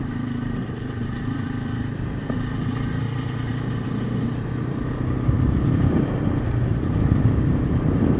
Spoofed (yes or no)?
yes